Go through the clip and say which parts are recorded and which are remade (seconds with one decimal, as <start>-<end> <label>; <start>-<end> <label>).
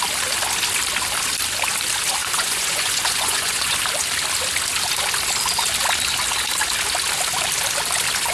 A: 0.0-2.2 recorded; 2.2-3.8 remade; 3.8-8.3 recorded